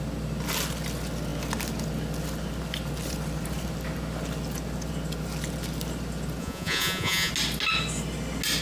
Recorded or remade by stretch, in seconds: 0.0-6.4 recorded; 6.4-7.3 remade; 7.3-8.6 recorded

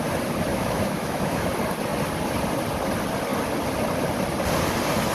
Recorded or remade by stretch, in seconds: 0.0-0.5 recorded; 0.5-1.5 remade; 1.5-5.1 recorded

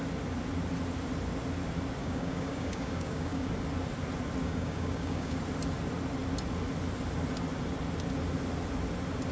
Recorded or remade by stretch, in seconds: 0.0-2.0 recorded; 2.0-3.5 remade; 3.5-4.4 recorded; 4.4-5.4 remade; 5.4-9.3 recorded